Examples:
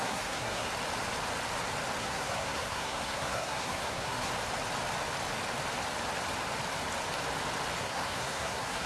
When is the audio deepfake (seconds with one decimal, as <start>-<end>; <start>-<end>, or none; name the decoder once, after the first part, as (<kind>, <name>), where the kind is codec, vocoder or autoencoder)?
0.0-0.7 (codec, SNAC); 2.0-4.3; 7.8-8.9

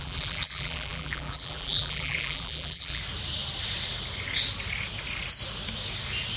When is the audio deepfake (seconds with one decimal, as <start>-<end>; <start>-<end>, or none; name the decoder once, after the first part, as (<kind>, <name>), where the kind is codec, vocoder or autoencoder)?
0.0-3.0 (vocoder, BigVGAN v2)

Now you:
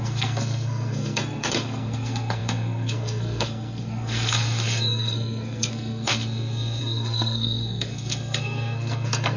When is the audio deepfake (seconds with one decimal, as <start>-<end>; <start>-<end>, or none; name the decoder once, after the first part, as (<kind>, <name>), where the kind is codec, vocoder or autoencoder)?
0.0-9.4 (codec, SNAC)

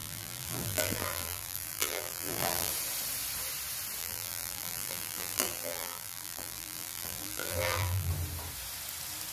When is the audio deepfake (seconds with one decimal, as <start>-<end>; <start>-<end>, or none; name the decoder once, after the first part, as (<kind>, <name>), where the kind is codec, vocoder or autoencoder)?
0.0-2.7 (vocoder, BigVGAN v2); 4.0-8.1

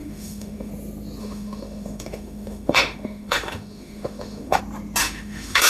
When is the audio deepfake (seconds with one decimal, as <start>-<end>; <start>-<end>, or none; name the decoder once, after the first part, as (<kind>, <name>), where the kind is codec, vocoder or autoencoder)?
0.0-0.7 (autoencoder, DAC-VAE); 1.2-4.6; 5.0-5.7